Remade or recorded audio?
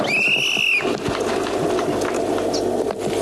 recorded